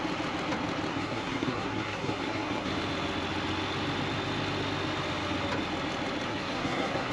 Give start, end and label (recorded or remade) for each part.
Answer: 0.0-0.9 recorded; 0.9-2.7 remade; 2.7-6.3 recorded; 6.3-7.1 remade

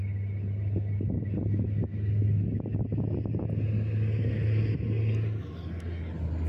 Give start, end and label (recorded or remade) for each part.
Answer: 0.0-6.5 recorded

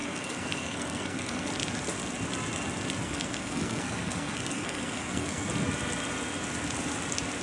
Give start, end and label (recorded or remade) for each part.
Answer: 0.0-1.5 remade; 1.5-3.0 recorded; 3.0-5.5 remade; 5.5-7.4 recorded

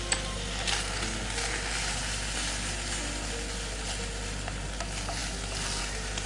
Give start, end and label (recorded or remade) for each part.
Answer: 0.0-6.3 recorded

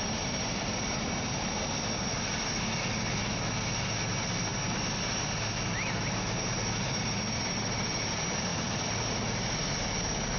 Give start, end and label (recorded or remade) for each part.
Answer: 0.0-10.4 recorded

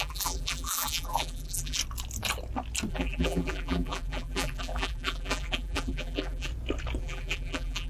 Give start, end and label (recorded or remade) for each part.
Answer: 0.0-1.8 remade; 1.8-2.9 recorded; 2.9-6.5 remade; 6.5-7.0 recorded; 7.0-7.9 remade

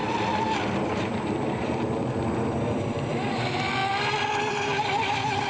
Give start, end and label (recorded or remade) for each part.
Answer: 0.0-3.8 remade; 3.8-4.5 recorded; 4.5-5.5 remade